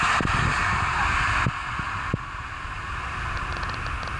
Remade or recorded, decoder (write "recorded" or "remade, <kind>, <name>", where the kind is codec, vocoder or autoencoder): recorded